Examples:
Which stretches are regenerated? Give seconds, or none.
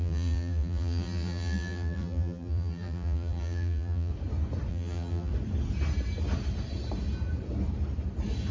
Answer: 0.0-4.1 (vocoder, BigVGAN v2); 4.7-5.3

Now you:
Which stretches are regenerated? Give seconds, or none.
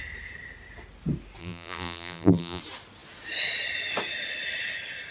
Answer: 1.4-2.6 (vocoder, BigVGAN v2)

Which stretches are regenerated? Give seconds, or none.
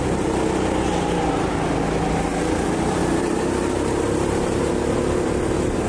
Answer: 3.0-4.7 (vocoder, BigVGAN v2)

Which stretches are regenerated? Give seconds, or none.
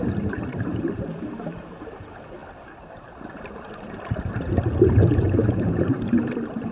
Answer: 0.0-2.4 (vocoder, BigVGAN v2); 5.6-6.7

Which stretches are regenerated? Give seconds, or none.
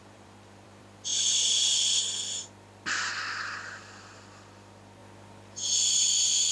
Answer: 0.0-5.0 (vocoder, BigVGAN v2); 5.7-6.5